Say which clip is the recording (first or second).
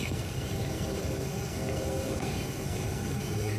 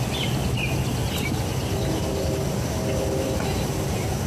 second